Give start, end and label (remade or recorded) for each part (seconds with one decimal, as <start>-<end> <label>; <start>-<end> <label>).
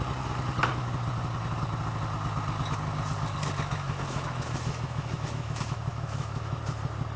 0.0-3.7 recorded; 3.7-6.6 remade; 6.6-7.2 recorded